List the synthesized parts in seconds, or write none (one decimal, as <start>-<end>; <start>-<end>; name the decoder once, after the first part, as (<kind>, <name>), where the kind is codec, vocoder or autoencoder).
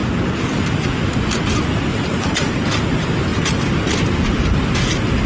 1.9-2.5 (vocoder, Vocos)